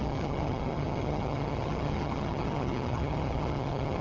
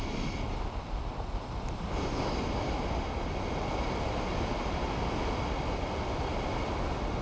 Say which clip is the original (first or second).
second